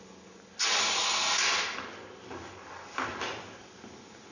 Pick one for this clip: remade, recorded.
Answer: recorded